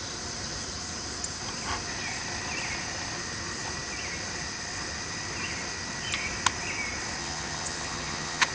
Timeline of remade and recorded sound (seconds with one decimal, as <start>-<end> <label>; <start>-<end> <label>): 0.0-7.2 recorded; 7.2-8.5 remade